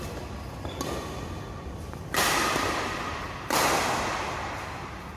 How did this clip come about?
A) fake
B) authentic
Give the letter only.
B